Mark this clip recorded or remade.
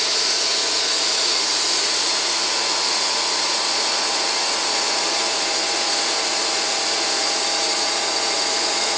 remade